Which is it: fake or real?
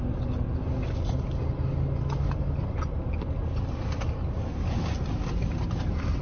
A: real